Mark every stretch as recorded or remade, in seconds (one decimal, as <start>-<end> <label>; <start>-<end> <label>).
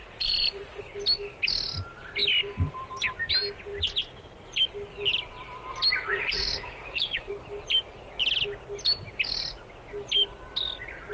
0.0-0.8 remade; 0.8-6.1 recorded; 6.1-7.3 remade; 7.3-11.1 recorded